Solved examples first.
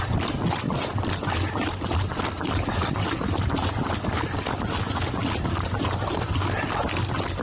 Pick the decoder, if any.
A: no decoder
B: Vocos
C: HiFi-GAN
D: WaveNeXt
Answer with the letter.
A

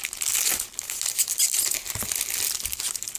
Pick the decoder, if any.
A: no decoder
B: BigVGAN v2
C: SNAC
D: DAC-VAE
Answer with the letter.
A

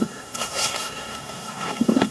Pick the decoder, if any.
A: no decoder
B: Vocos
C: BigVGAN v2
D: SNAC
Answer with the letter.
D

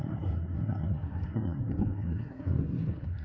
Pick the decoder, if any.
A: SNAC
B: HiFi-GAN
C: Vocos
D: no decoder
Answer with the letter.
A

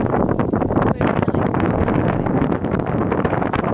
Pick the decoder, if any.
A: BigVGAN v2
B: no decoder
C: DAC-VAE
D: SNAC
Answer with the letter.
A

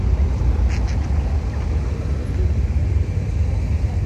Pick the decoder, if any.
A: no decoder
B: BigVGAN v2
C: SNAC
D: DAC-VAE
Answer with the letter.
A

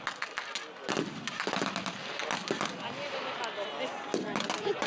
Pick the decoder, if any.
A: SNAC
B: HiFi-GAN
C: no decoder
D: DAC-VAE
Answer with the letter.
C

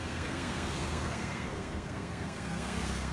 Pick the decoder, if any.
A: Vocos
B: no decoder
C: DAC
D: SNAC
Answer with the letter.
D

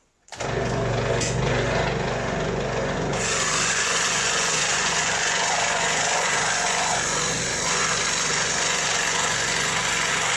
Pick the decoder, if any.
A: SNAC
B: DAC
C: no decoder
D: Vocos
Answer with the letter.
D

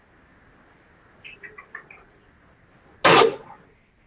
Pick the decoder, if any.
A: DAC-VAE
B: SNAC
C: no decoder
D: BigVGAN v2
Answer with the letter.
C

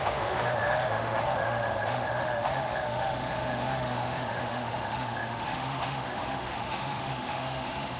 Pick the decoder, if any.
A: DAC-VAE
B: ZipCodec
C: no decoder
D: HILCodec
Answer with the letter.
A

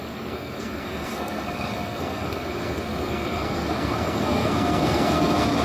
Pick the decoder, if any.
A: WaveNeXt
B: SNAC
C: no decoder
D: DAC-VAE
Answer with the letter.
B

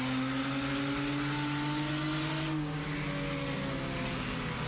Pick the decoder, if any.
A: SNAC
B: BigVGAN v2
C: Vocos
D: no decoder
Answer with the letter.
D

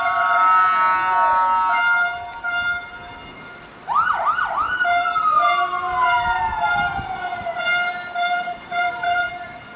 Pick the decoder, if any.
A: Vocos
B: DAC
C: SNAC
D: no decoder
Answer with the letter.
D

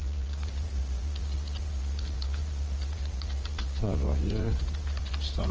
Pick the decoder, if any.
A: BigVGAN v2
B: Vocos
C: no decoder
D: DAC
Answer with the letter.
B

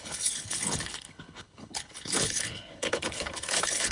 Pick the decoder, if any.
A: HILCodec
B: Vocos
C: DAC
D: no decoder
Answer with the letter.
A